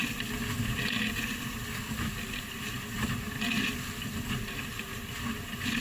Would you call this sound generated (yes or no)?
no